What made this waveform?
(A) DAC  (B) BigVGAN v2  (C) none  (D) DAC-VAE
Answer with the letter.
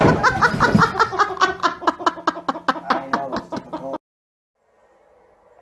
C